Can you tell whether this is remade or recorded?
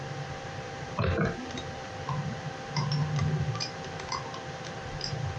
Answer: remade